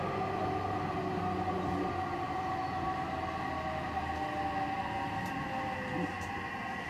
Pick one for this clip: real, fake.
real